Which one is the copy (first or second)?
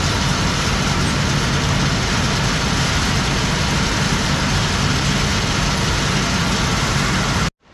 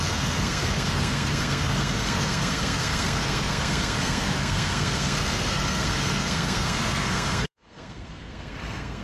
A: second